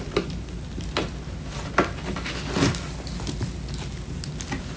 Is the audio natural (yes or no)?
yes